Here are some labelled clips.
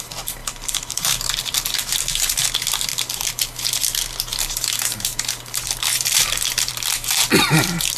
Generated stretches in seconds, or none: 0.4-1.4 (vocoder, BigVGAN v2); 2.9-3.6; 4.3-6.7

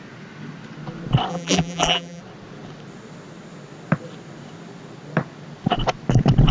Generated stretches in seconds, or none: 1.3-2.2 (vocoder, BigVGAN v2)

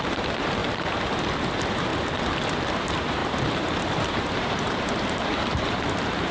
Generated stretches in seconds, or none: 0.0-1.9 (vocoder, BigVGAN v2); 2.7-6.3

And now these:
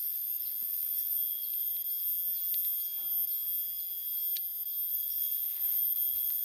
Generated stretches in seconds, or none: 0.0-1.7 (vocoder, BigVGAN v2); 4.9-6.4